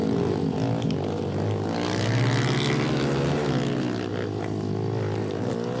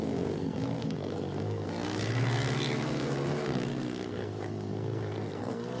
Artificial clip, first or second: second